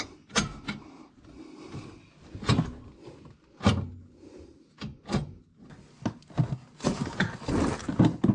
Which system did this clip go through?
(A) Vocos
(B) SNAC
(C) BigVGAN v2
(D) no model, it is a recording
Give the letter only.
D